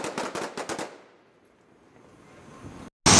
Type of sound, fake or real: real